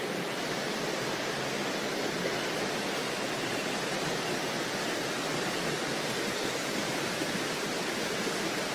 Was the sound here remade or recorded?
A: recorded